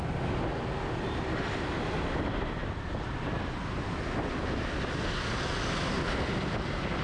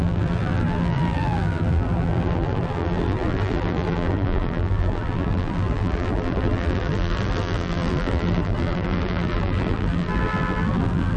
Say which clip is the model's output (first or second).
second